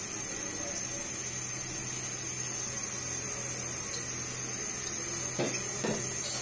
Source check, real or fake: real